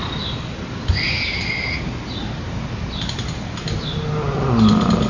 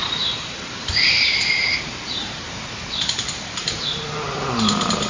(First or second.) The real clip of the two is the first